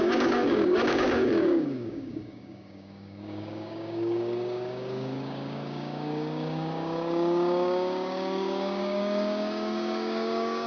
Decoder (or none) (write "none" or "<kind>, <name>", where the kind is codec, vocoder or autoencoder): codec, DAC